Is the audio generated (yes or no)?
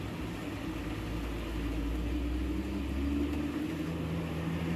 no